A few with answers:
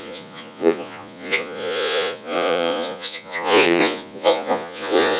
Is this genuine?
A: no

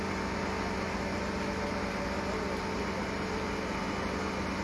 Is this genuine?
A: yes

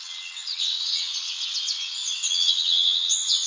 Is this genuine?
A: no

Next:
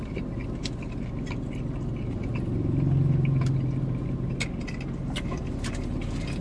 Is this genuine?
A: yes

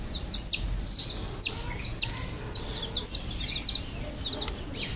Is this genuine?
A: yes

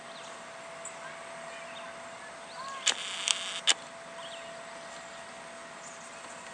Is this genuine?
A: yes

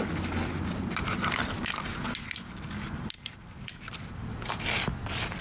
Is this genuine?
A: yes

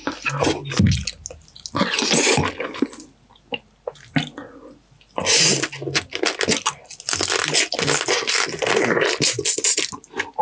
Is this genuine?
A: yes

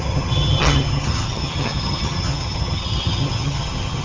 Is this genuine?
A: no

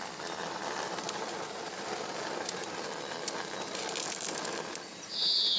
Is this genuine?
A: yes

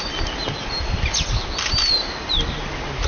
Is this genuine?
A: yes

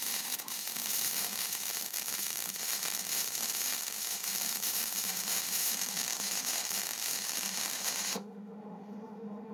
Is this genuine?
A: no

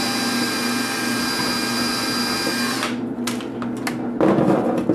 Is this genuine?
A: yes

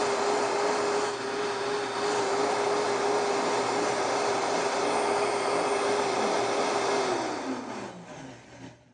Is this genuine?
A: yes